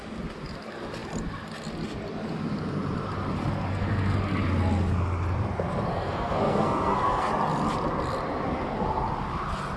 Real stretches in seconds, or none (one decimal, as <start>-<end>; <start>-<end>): 0.0-3.7; 4.2-5.9; 7.3-9.8